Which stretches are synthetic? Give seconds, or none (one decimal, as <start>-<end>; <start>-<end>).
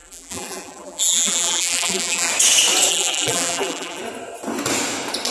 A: 0.0-2.3; 2.9-4.0